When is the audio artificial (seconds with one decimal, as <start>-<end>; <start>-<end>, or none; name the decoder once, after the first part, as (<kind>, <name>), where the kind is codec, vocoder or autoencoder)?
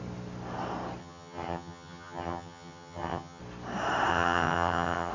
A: 1.0-3.4 (vocoder, HiFi-GAN); 4.1-5.1